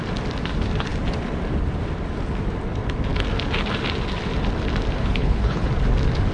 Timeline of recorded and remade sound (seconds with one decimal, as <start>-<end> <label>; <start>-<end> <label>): 0.0-5.0 recorded; 5.0-5.7 remade; 5.7-6.3 recorded